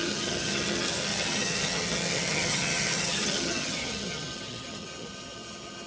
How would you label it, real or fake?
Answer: fake